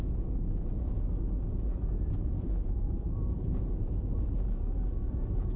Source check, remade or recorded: remade